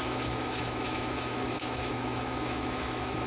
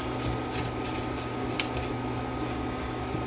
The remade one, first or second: first